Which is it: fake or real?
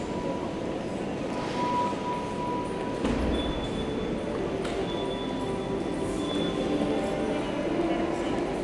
real